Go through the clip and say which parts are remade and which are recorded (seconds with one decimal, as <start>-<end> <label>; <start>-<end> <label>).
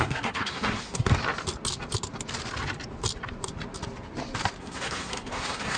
0.0-1.1 remade; 1.1-4.6 recorded; 4.6-5.8 remade